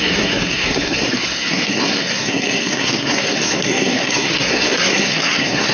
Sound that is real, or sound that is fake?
fake